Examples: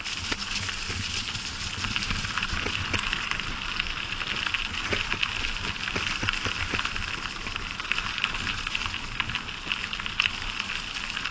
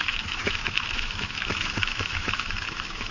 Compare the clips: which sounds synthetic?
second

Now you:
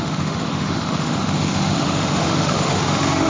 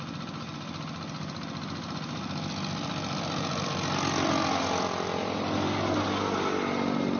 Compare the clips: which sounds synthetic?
first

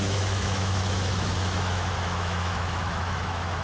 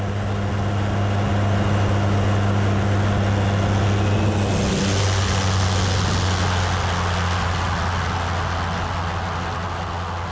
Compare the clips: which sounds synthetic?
first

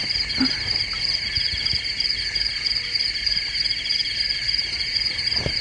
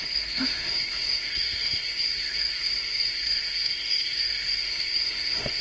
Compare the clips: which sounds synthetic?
second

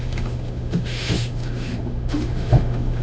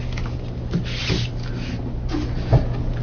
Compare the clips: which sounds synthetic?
first